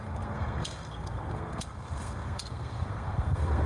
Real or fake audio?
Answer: fake